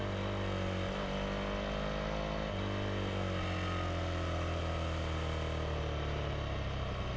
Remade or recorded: recorded